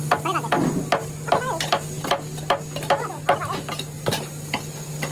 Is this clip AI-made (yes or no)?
no